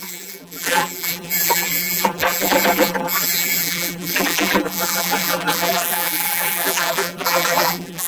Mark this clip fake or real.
fake